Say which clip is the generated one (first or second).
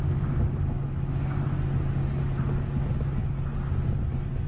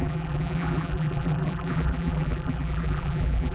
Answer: second